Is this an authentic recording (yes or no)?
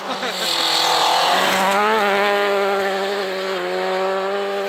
yes